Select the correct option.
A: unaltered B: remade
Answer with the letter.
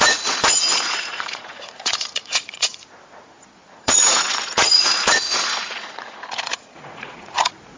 B